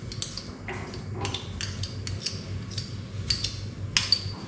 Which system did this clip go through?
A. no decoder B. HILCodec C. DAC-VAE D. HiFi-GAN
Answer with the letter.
A